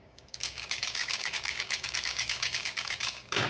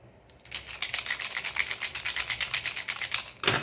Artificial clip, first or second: first